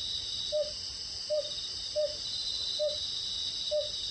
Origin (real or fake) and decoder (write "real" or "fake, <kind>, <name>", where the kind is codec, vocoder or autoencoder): real